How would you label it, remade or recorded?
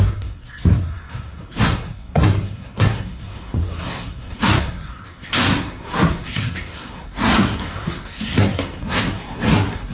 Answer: remade